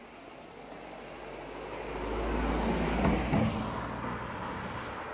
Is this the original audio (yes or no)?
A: yes